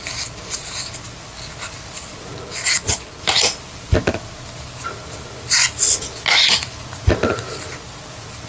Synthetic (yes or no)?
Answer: no